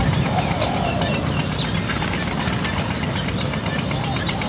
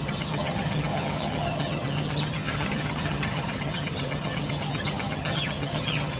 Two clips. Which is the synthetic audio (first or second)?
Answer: second